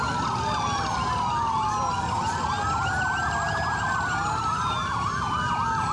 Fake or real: real